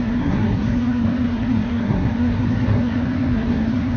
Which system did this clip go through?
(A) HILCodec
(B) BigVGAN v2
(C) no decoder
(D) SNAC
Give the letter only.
D